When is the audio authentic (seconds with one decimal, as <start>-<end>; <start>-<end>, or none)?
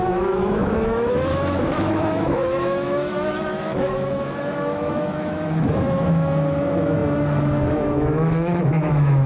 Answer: none